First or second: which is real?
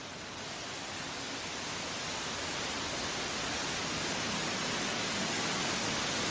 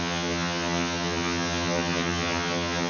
first